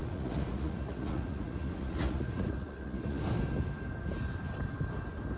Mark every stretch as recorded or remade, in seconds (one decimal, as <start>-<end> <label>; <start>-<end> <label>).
0.0-3.2 remade; 3.2-5.4 recorded